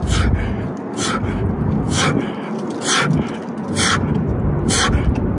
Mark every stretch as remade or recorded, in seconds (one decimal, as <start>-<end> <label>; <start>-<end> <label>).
0.0-5.4 recorded